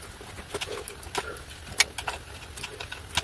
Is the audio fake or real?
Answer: real